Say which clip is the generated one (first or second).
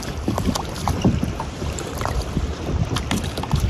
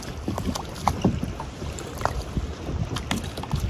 first